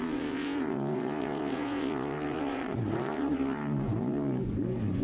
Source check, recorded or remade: remade